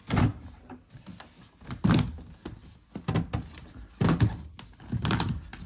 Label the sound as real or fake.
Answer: real